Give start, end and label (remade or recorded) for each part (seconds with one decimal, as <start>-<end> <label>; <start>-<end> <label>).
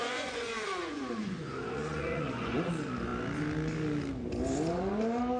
0.0-2.7 remade; 2.7-5.4 recorded